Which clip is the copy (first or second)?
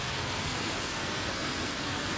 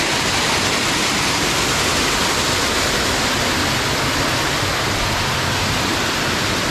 first